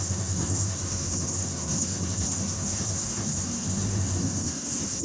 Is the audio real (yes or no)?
no